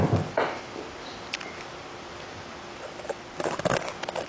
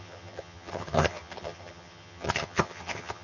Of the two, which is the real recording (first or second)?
first